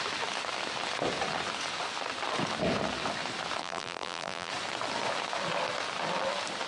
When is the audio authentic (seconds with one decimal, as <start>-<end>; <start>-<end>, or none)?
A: 0.0-3.6; 4.5-6.7